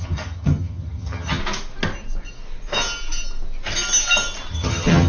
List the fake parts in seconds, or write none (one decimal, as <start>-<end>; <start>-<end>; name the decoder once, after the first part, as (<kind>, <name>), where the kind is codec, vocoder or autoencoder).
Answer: 0.0-1.4 (vocoder, HiFi-GAN); 4.5-5.1